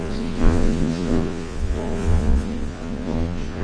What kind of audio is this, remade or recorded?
remade